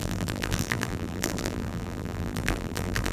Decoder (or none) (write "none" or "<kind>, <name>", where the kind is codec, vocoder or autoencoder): vocoder, BigVGAN v2